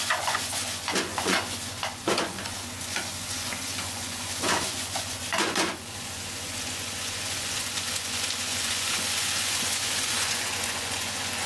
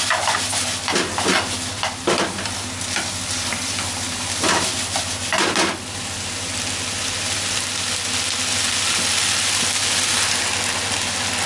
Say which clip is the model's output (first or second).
first